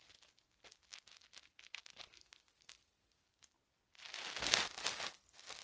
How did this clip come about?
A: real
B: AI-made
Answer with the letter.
A